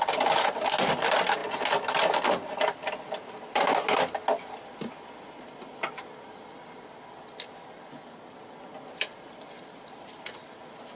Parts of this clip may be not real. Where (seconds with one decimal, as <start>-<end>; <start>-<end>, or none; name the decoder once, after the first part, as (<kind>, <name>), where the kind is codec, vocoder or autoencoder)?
none